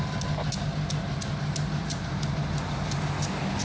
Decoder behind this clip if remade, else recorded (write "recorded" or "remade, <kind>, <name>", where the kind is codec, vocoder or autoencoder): recorded